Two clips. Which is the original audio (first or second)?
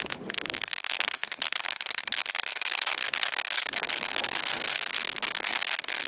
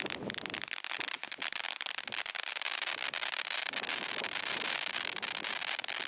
second